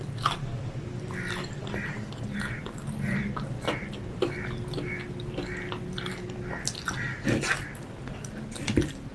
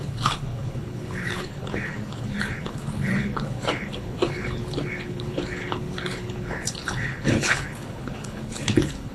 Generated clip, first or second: second